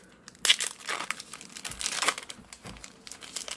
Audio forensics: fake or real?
real